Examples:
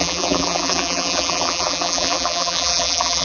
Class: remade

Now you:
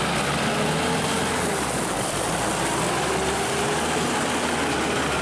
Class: recorded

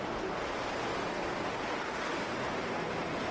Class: recorded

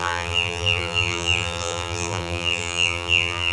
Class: remade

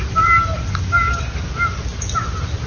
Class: recorded